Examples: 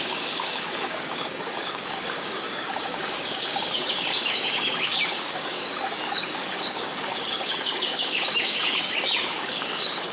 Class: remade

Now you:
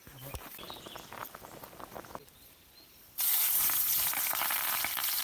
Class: recorded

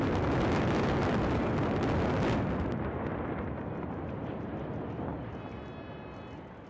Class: recorded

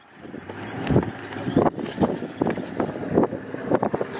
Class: recorded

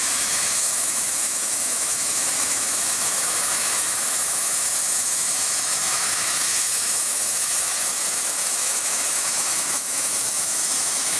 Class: remade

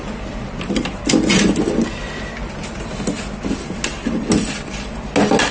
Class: recorded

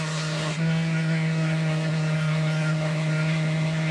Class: remade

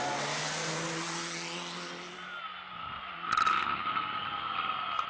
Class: recorded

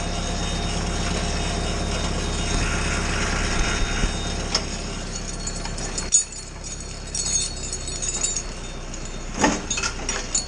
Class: recorded